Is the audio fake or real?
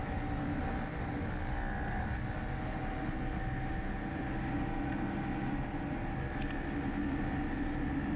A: real